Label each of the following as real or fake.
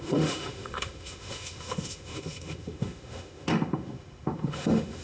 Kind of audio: fake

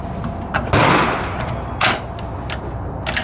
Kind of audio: real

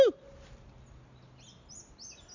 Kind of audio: real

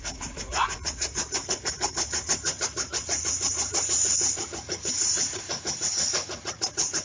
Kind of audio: fake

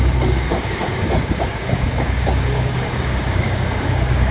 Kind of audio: fake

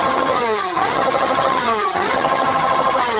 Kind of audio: fake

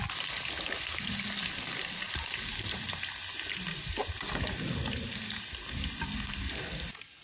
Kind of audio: real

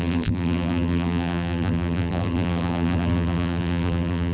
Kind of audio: fake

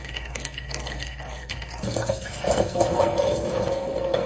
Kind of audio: fake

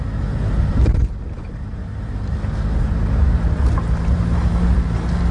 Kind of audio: real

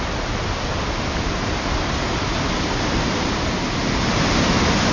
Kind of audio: real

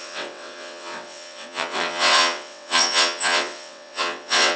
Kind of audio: fake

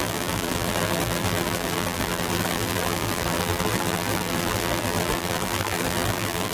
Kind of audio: fake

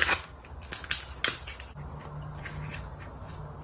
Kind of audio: real